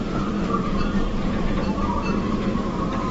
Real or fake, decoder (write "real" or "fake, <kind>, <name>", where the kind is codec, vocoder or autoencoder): fake, vocoder, BigVGAN v2